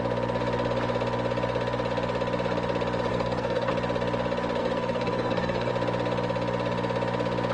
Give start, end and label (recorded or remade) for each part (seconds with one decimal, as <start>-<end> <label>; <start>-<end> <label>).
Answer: 0.0-3.1 recorded; 3.1-3.7 remade; 3.7-4.6 recorded; 4.6-5.7 remade; 5.7-7.5 recorded

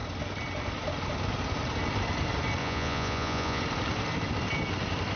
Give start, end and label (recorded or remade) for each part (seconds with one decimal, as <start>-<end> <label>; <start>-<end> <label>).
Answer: 0.0-2.6 recorded; 2.6-3.6 remade; 3.6-5.2 recorded

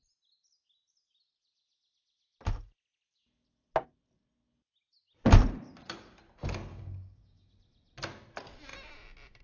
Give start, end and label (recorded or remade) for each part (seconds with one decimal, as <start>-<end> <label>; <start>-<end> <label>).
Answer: 0.0-6.7 recorded; 6.7-7.5 remade; 7.5-9.4 recorded

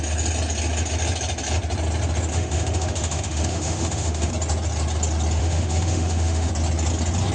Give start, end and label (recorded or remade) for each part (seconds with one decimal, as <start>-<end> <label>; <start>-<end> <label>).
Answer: 0.0-2.3 recorded; 2.3-4.3 remade; 4.3-5.4 recorded; 5.4-6.5 remade; 6.5-7.3 recorded

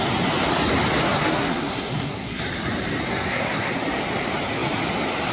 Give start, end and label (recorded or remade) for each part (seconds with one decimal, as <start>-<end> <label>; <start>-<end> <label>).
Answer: 0.0-1.0 recorded; 1.0-2.4 remade; 2.4-3.1 recorded; 3.1-3.7 remade; 3.7-5.3 recorded

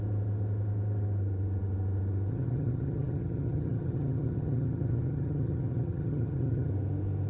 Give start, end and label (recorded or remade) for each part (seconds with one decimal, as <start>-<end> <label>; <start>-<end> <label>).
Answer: 0.0-2.3 recorded; 2.3-6.7 remade; 6.7-7.3 recorded

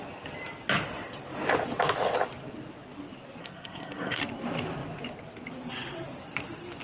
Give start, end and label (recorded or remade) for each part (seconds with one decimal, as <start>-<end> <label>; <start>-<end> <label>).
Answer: 0.0-3.4 recorded; 3.4-4.2 remade; 4.2-6.8 recorded

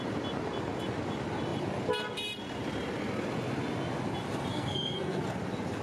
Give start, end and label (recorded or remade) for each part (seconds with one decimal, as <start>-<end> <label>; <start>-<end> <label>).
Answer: 0.0-4.5 recorded; 4.5-5.2 remade; 5.2-5.8 recorded